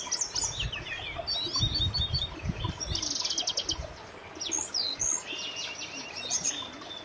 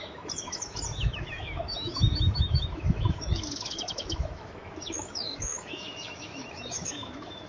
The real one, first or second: first